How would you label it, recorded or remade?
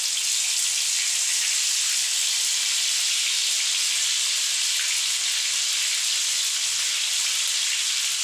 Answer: recorded